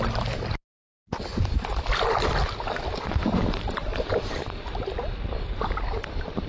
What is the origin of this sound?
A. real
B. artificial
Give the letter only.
A